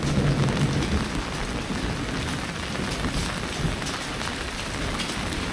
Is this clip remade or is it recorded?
recorded